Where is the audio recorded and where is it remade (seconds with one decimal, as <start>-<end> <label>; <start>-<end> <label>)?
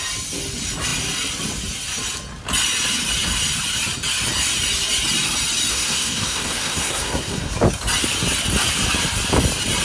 0.0-5.7 recorded; 5.7-7.5 remade; 7.5-9.8 recorded